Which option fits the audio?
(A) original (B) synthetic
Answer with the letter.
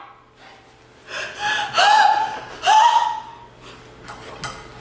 A